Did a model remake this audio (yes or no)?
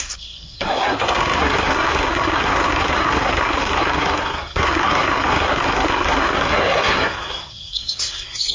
yes